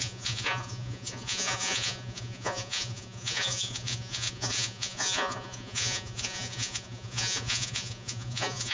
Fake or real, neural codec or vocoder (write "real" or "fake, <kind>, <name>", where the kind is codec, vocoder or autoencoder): fake, vocoder, Vocos